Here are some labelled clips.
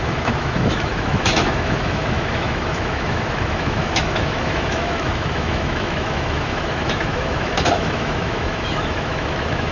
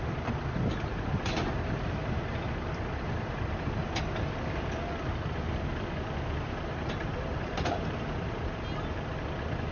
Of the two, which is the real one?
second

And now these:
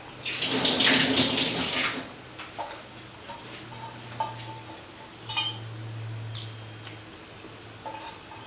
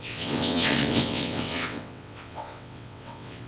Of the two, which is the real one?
first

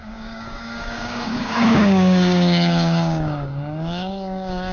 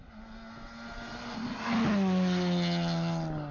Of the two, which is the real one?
second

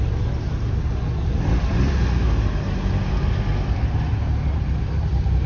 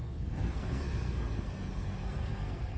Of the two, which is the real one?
first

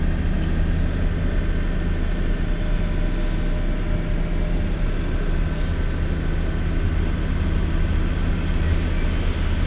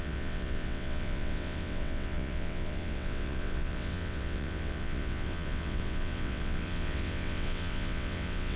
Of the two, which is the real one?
first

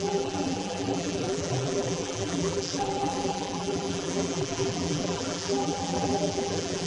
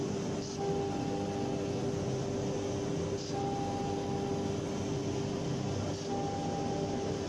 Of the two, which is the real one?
second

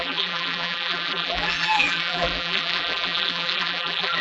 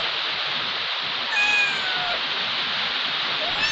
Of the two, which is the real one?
second